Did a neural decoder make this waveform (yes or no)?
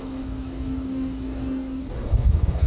yes